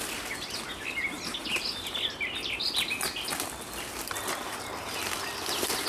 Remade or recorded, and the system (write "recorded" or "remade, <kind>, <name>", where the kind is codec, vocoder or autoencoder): recorded